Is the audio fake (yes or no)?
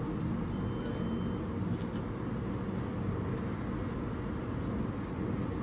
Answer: no